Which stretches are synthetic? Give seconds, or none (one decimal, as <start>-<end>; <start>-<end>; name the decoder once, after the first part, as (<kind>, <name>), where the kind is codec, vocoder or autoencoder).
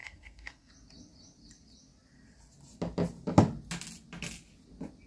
0.0-0.7 (codec, SNAC)